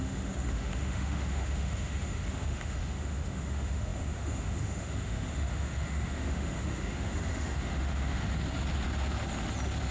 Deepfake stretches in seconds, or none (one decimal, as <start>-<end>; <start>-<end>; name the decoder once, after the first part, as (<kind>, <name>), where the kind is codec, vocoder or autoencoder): 0.0-8.3 (autoencoder, DAC-VAE)